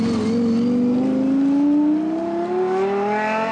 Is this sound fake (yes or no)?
no